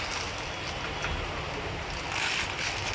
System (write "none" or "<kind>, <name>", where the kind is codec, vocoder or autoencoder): none